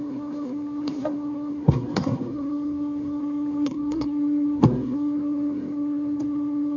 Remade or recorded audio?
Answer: remade